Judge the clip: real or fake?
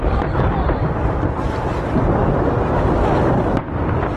real